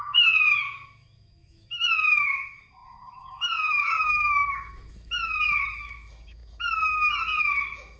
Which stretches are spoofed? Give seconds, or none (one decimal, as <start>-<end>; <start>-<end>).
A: 0.0-8.0